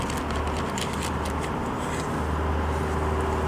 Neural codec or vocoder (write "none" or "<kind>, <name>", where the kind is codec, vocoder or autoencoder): none